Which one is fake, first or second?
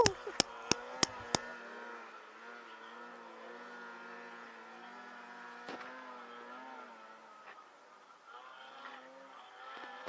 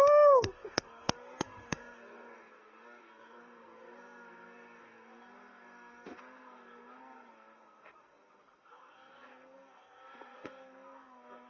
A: second